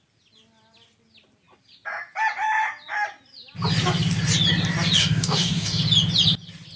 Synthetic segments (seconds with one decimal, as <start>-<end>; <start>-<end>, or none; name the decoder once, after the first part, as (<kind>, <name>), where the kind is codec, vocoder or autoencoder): 5.0-5.8 (codec, DAC)